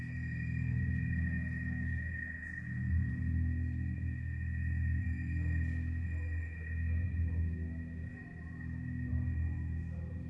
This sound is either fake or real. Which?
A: real